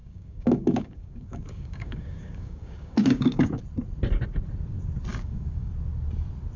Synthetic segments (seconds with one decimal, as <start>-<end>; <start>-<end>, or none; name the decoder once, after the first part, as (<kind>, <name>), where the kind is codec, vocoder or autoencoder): 0.0-3.6 (codec, DAC); 5.1-5.7